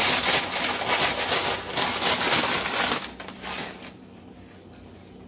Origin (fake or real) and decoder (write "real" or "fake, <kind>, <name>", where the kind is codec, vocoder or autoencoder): real